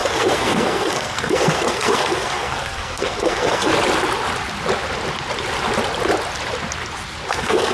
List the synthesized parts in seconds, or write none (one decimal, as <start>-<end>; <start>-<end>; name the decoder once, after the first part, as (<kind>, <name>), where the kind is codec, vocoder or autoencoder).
0.0-3.7 (codec, SNAC); 7.3-7.7